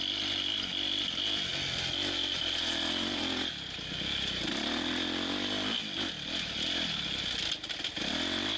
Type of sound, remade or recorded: recorded